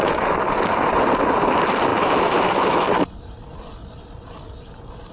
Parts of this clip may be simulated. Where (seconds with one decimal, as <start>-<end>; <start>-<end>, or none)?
none